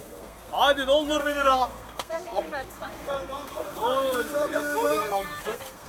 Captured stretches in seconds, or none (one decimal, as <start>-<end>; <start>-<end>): 0.5-1.2